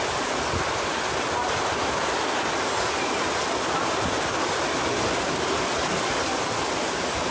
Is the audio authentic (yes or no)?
yes